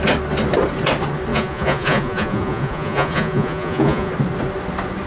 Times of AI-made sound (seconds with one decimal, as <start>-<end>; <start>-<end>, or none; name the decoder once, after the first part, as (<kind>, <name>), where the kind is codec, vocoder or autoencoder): 1.3-4.1 (vocoder, Vocos)